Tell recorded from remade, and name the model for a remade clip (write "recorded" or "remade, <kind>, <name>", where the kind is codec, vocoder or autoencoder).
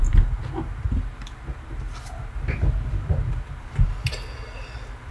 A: recorded